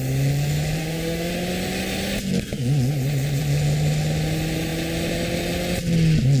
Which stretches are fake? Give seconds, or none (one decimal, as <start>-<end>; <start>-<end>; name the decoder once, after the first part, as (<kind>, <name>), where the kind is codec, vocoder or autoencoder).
0.8-1.3 (autoencoder, DAC-VAE)